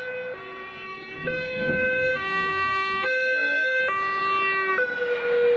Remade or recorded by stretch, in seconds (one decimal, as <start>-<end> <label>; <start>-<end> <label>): 0.0-0.4 recorded; 0.4-3.8 remade; 3.8-5.6 recorded